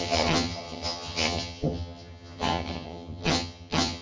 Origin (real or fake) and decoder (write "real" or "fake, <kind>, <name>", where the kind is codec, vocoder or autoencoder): fake, vocoder, HiFi-GAN